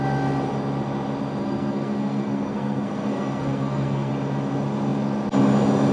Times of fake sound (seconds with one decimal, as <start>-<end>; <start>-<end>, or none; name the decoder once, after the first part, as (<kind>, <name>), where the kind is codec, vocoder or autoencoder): 1.4-4.1 (codec, SNAC)